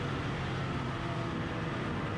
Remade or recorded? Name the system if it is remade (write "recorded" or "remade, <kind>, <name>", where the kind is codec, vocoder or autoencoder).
remade, vocoder, BigVGAN v2